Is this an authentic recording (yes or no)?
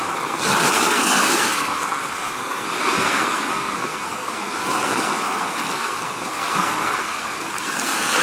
no